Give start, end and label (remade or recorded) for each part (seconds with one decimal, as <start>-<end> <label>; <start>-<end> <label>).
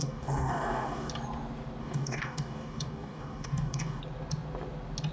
0.0-1.1 remade; 1.1-1.8 recorded; 1.8-4.0 remade; 4.0-5.1 recorded